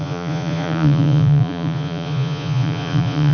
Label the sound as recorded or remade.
remade